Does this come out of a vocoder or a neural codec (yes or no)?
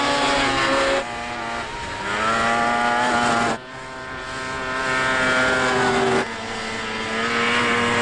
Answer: no